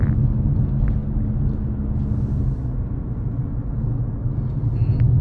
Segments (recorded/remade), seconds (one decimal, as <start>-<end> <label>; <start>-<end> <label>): 0.0-5.2 recorded

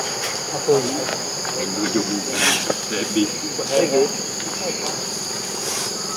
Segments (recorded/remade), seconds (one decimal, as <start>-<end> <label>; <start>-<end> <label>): 0.0-1.1 remade; 1.1-4.8 recorded; 4.8-6.2 remade

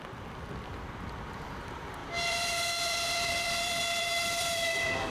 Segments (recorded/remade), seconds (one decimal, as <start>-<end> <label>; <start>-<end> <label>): 0.0-2.0 recorded; 2.0-5.1 remade

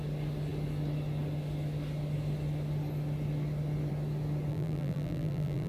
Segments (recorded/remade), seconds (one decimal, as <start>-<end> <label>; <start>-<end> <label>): 0.0-4.5 recorded; 4.5-5.7 remade

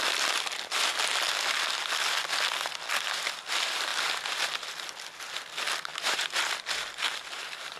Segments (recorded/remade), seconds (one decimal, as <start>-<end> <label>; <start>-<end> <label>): 0.0-5.9 recorded; 5.9-7.8 remade

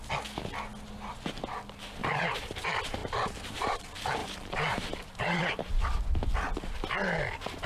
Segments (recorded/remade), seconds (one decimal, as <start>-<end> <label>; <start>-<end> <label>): 0.0-2.0 recorded; 2.0-2.6 remade; 2.6-3.0 recorded; 3.0-3.8 remade; 3.8-4.2 recorded; 4.2-5.7 remade; 5.7-7.7 recorded

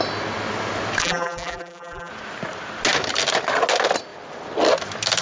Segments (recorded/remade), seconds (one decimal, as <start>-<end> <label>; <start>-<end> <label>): 0.0-1.0 recorded; 1.0-2.1 remade; 2.1-5.2 recorded

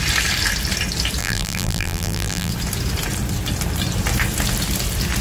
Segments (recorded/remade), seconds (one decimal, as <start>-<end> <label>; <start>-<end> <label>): 0.0-1.2 recorded; 1.2-2.5 remade; 2.5-5.2 recorded